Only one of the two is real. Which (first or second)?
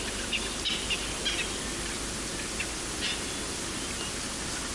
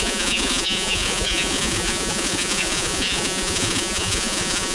first